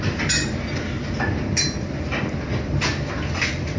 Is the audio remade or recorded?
recorded